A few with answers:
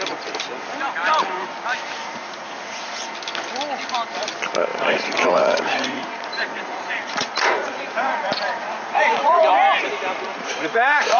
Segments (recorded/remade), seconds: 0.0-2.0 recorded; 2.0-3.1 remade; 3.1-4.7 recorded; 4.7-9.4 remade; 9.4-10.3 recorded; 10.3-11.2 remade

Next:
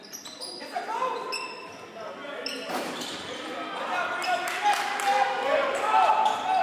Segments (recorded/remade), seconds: 0.0-5.5 recorded; 5.5-6.1 remade; 6.1-6.6 recorded